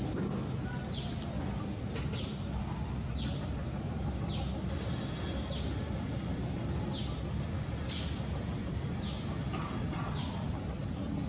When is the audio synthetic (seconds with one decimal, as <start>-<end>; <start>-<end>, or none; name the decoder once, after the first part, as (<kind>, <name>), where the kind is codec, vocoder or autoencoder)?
none